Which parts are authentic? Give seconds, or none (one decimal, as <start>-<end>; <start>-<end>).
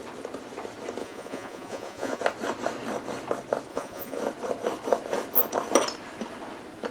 0.0-1.0; 2.2-3.7; 4.2-6.9